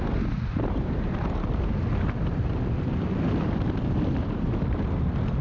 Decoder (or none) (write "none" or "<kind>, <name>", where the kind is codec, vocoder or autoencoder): none